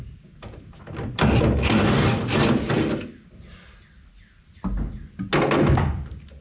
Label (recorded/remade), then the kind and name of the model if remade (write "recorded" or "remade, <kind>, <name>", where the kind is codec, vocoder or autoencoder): recorded